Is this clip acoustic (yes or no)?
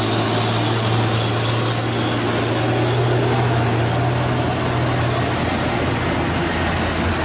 yes